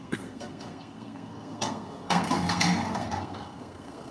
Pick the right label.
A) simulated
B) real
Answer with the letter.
A